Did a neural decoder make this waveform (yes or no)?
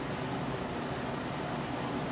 no